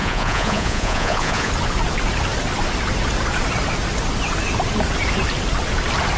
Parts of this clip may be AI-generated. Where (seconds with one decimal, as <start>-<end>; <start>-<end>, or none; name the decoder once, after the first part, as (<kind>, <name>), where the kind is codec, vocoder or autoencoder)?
0.0-1.5 (vocoder, Vocos)